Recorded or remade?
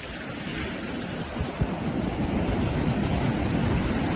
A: recorded